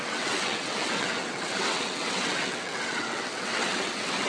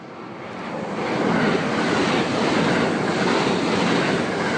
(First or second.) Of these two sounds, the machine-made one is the first